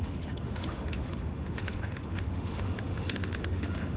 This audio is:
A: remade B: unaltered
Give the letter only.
A